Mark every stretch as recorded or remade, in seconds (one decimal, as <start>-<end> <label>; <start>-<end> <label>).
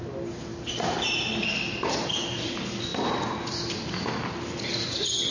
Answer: 0.0-5.3 recorded